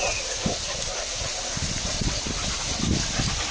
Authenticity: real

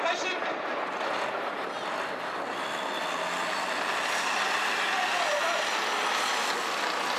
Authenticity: real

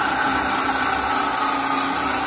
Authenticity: real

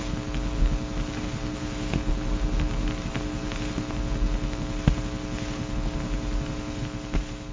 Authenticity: real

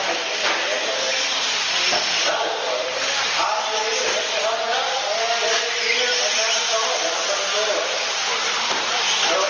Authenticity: real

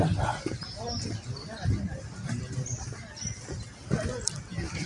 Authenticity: real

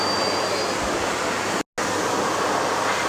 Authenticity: real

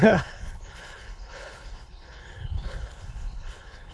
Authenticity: fake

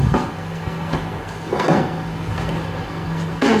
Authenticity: fake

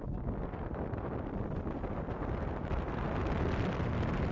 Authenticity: real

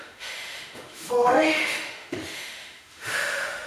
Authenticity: fake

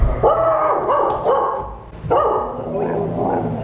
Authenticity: real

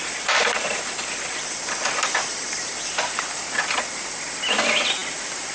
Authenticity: real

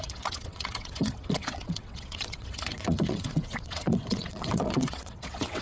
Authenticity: fake